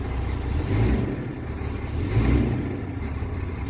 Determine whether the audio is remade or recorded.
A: recorded